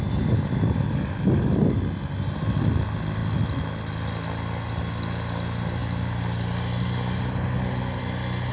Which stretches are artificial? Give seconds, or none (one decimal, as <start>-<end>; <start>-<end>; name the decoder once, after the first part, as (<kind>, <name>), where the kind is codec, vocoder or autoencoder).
none